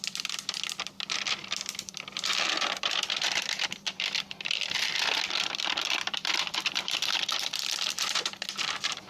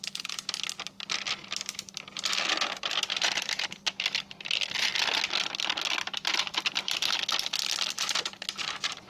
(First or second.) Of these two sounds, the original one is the second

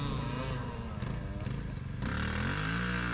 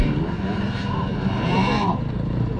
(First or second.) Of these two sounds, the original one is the first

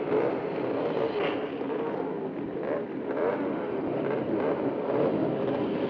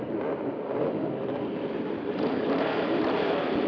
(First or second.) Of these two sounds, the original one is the first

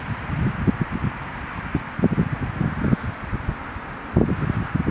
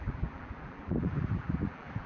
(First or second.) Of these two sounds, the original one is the first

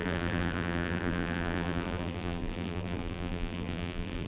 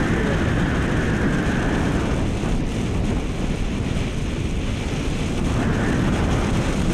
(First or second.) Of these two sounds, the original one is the second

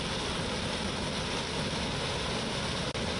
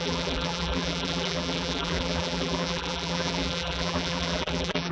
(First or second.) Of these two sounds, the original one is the first